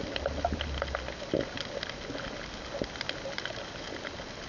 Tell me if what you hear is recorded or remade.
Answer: recorded